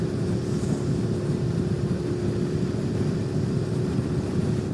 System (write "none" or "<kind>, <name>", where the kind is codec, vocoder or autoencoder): none